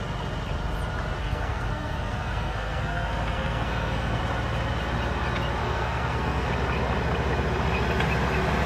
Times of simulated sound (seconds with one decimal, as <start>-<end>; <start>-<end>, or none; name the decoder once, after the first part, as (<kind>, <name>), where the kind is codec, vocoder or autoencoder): 1.2-4.2 (codec, SNAC); 5.6-6.5